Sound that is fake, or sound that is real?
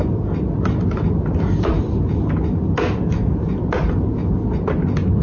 real